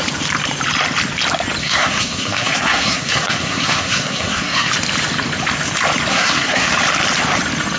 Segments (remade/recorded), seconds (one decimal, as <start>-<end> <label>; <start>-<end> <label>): 0.0-1.6 recorded; 1.6-4.7 remade; 4.7-6.1 recorded; 6.1-6.7 remade; 6.7-7.8 recorded